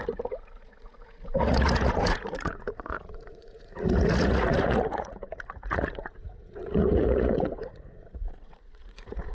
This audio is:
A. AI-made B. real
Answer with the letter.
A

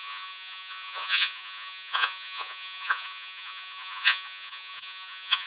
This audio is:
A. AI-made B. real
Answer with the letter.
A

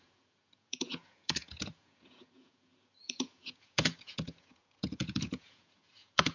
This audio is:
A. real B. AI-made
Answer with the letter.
B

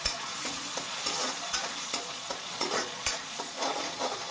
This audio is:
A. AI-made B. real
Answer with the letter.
A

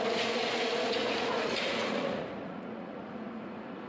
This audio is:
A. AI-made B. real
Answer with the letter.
A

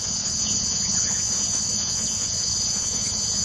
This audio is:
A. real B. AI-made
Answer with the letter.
B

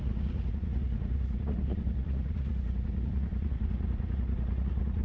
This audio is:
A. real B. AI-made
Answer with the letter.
B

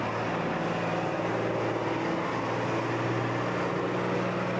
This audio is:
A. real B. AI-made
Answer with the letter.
A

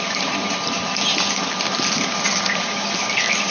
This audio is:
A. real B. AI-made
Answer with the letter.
A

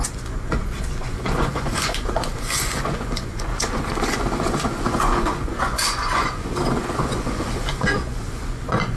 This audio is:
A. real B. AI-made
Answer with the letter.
B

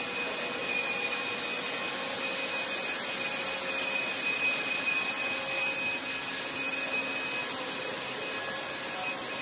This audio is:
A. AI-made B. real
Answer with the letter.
B